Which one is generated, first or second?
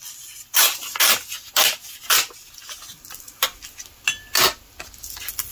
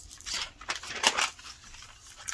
second